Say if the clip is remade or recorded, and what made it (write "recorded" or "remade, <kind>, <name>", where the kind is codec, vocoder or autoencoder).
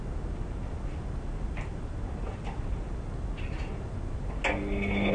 recorded